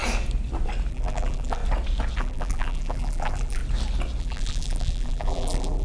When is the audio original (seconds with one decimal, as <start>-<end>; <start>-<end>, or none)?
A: 0.0-0.9; 1.6-2.2; 3.6-4.2